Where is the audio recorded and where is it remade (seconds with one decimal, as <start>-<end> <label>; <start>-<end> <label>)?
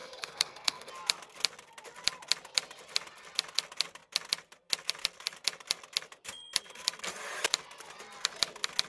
0.0-0.9 remade; 0.9-8.9 recorded